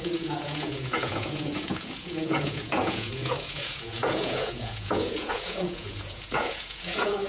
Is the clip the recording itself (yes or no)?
no